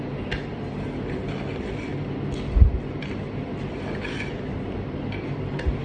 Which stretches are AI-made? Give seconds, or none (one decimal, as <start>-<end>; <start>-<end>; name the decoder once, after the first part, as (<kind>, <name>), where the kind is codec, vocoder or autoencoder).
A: none

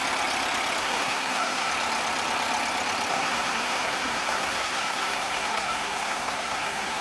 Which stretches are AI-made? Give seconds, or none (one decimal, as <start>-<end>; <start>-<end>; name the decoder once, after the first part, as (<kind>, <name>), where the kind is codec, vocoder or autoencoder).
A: 0.8-1.7 (codec, SNAC); 3.1-7.0

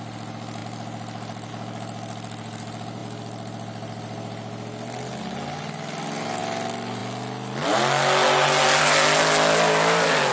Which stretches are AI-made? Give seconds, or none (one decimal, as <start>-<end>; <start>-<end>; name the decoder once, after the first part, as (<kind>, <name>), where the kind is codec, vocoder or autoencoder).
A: none

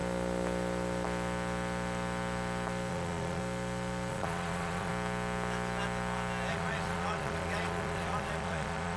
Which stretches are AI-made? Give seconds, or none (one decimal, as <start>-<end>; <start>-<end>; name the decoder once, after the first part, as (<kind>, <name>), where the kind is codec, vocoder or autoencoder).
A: 2.9-3.4 (vocoder, Vocos); 4.1-4.9; 6.5-9.0